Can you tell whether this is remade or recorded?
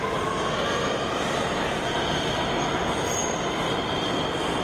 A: recorded